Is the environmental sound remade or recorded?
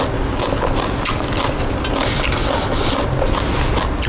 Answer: recorded